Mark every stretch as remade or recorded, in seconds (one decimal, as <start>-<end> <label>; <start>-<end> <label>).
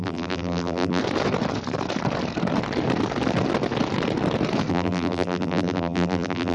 0.0-1.0 remade; 1.0-4.7 recorded; 4.7-6.5 remade